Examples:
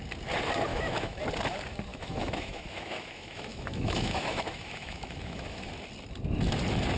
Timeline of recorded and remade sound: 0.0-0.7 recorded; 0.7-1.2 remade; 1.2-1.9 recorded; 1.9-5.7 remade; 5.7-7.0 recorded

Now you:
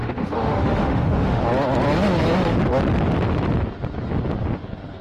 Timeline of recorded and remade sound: 0.0-1.4 remade; 1.4-5.0 recorded

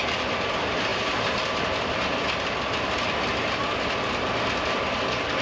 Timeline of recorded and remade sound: 0.0-5.4 recorded

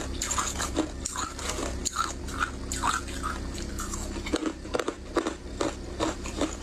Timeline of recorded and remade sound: 0.0-6.6 recorded

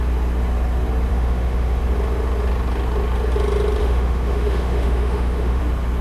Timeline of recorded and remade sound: 0.0-1.1 recorded; 1.1-1.8 remade; 1.8-3.8 recorded; 3.8-5.6 remade; 5.6-6.0 recorded

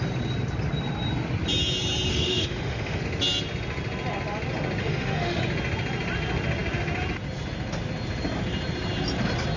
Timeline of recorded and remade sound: 0.0-2.1 recorded; 2.1-3.0 remade; 3.0-4.8 recorded; 4.8-5.4 remade; 5.4-9.6 recorded

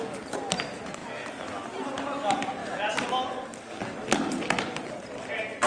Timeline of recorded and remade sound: 0.0-5.7 recorded

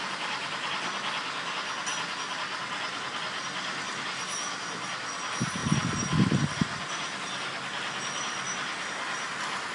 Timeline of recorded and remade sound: 0.0-9.7 recorded